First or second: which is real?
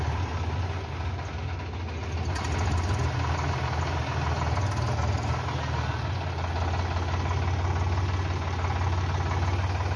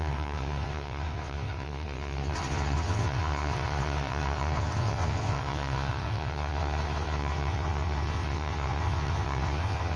first